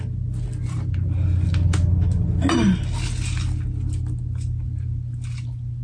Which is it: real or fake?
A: real